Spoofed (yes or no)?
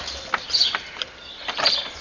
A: yes